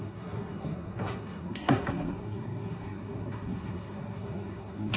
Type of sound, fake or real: fake